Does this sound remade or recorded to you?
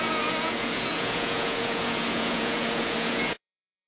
remade